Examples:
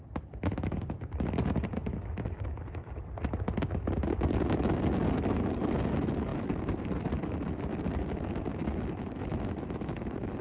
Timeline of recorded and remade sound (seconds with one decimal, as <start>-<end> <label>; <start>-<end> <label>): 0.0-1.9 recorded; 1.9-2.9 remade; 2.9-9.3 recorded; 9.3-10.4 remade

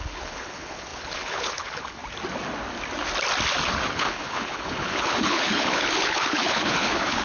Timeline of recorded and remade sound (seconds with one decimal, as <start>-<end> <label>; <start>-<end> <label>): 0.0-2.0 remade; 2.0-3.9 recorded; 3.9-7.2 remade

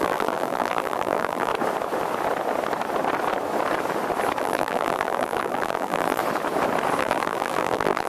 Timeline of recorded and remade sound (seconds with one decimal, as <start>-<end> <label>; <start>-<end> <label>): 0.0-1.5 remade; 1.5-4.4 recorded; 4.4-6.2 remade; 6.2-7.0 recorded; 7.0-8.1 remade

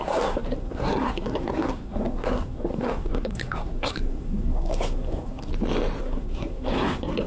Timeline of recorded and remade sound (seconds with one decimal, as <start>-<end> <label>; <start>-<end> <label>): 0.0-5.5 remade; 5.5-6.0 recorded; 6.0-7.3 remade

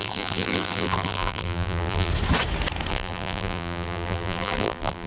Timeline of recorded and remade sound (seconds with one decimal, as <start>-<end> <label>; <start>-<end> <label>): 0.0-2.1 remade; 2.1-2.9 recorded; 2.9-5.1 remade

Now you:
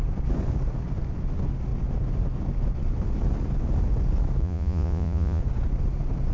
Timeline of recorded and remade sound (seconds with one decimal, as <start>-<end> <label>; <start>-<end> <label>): 0.0-4.4 recorded; 4.4-5.4 remade; 5.4-6.3 recorded

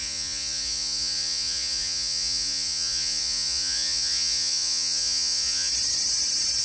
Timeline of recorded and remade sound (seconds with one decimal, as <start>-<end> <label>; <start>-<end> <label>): 0.0-5.7 remade; 5.7-6.6 recorded